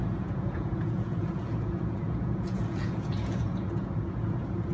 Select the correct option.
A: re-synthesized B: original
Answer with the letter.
A